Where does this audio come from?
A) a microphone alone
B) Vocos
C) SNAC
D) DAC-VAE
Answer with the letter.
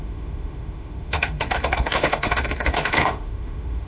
D